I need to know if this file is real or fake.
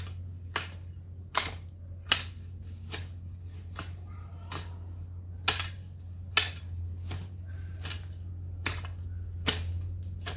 real